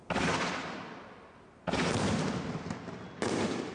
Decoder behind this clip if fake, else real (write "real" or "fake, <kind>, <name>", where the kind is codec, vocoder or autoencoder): real